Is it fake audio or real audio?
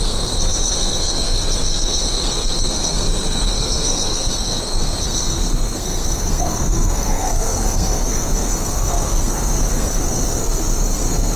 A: fake